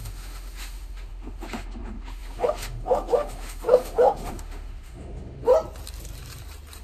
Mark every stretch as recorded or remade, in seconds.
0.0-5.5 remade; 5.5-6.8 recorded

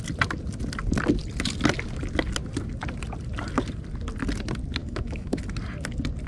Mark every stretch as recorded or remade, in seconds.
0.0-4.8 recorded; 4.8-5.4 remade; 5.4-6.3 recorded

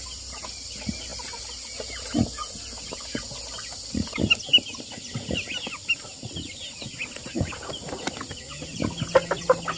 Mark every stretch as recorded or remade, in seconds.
0.0-9.8 recorded